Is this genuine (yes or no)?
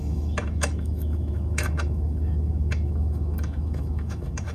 no